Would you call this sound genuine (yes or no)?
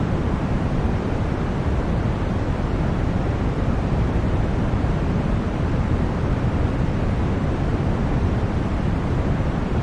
no